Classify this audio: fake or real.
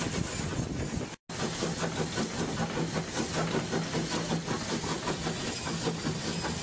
real